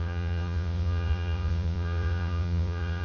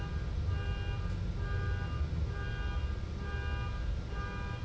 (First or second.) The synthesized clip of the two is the first